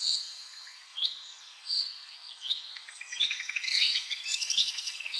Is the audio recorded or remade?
remade